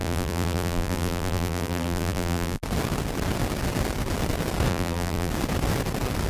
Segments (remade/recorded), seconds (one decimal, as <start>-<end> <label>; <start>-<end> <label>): 0.0-2.6 remade; 2.6-4.7 recorded; 4.7-5.3 remade; 5.3-6.3 recorded